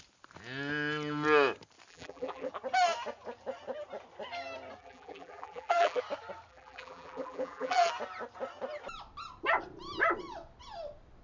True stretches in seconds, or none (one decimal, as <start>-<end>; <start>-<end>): 0.0-1.9; 2.5-4.8; 6.0-6.5; 7.9-11.2